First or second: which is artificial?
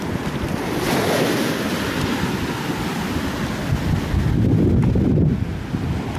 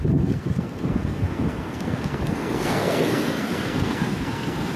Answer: second